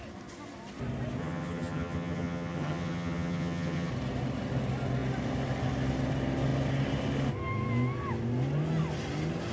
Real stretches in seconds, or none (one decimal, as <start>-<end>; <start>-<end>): 0.0-1.2; 3.9-9.5